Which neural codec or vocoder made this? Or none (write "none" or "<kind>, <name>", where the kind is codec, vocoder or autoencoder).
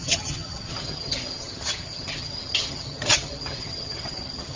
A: vocoder, HiFi-GAN